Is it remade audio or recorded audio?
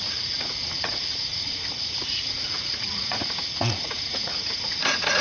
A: remade